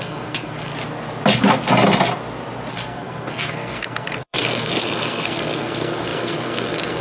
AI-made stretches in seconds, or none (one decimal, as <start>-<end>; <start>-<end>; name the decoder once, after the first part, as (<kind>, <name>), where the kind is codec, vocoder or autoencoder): 0.0-0.7 (codec, SNAC); 2.7-7.0

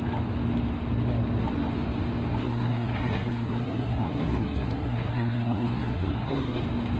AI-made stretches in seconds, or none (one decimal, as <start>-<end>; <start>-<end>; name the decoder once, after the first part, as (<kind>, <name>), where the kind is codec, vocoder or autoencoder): 2.4-6.6 (codec, SNAC)

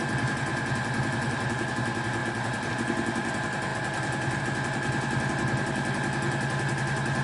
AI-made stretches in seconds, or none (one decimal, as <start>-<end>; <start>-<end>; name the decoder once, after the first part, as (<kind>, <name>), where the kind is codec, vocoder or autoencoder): none